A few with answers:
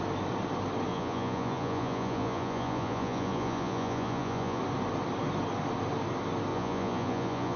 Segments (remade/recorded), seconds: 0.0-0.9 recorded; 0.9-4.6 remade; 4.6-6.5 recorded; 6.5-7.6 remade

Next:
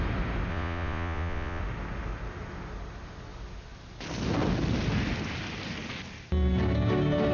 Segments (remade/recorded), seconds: 0.0-0.5 recorded; 0.5-1.6 remade; 1.6-7.3 recorded

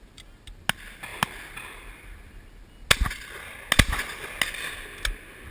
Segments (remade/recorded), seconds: 0.0-5.5 recorded